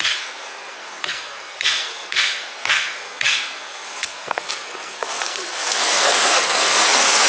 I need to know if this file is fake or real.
fake